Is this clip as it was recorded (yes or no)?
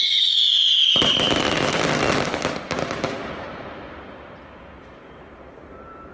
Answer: yes